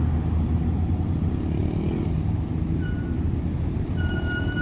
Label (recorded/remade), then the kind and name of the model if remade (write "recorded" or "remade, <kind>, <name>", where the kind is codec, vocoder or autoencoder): recorded